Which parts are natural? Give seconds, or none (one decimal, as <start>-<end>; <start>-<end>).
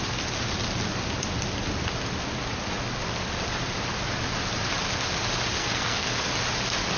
0.0-5.6; 6.1-7.0